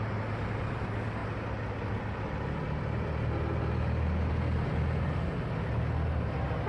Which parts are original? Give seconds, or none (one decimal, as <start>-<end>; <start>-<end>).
0.0-6.7